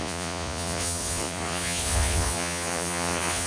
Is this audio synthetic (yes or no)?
yes